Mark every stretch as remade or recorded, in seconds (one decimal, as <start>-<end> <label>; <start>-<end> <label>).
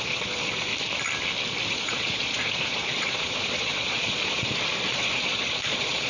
0.0-0.7 remade; 0.7-1.7 recorded; 1.7-6.1 remade